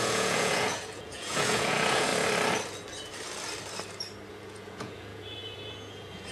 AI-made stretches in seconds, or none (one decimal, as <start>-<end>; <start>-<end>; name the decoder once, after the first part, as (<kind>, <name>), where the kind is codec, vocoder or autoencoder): 0.0-2.1 (vocoder, Vocos); 4.3-6.3

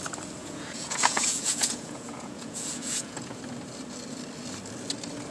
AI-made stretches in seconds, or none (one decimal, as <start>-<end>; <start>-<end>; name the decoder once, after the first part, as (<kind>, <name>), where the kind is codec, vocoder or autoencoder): 0.4-3.4 (vocoder, Vocos)

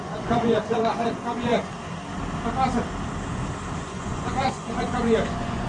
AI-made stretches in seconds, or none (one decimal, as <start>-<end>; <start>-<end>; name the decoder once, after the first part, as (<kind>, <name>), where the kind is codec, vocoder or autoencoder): 0.0-1.5 (vocoder, Vocos); 3.8-5.7

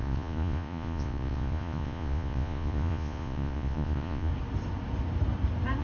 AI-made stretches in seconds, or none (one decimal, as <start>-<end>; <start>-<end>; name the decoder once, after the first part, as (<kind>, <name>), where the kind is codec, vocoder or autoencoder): 0.0-4.3 (vocoder, Vocos)